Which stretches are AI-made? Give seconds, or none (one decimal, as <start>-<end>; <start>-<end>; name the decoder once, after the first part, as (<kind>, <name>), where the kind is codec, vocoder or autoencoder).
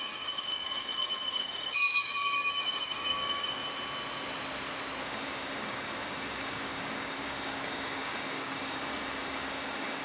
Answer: 0.0-3.6 (codec, DAC); 5.0-10.0